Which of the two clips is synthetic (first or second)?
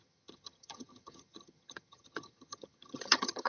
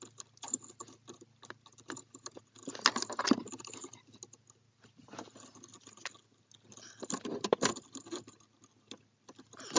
first